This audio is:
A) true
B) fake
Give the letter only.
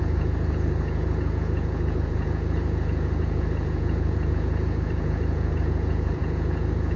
B